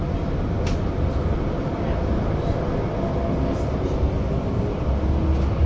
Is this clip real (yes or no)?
yes